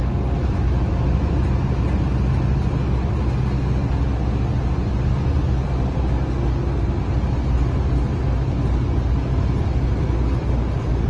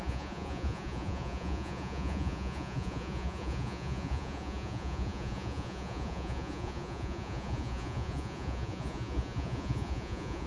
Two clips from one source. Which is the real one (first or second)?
first